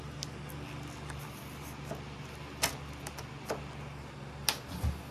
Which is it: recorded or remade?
recorded